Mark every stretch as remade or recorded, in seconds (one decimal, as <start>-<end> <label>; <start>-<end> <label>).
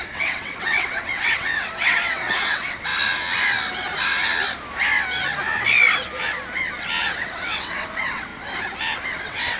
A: 0.0-2.9 remade; 2.9-7.2 recorded; 7.2-8.3 remade; 8.3-9.2 recorded; 9.2-9.6 remade